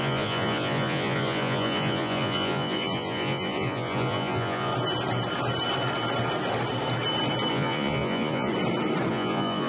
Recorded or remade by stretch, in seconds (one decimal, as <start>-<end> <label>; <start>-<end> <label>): 0.0-4.7 remade; 4.7-7.5 recorded; 7.5-8.5 remade; 8.5-9.1 recorded; 9.1-9.7 remade